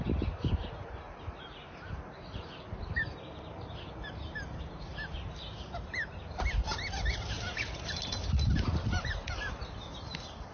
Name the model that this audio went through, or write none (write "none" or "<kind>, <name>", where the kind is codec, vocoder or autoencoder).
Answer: vocoder, BigVGAN v2